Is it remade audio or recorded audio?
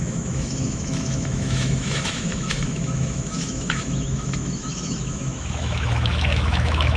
remade